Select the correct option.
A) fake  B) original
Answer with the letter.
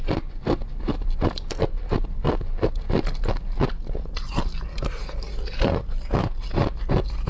B